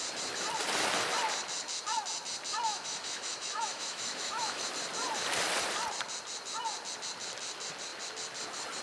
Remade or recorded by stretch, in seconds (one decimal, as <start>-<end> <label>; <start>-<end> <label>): 0.0-2.7 recorded; 2.7-4.7 remade; 4.7-8.8 recorded